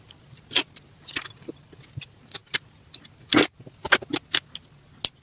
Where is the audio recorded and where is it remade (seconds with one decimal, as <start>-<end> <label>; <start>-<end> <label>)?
0.0-5.2 recorded